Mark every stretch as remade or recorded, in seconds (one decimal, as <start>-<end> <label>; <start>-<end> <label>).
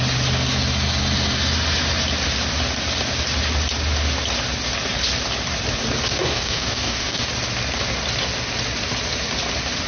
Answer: 0.0-6.1 recorded; 6.1-7.3 remade; 7.3-9.9 recorded